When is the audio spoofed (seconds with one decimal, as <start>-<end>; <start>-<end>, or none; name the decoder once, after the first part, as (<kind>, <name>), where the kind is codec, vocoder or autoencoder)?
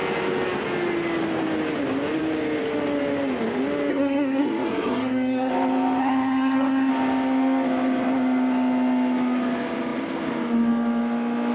3.9-5.5 (codec, SNAC); 6.0-6.9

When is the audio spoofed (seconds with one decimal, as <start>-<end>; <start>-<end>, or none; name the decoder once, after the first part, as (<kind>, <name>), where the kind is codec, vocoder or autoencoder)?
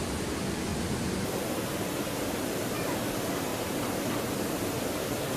none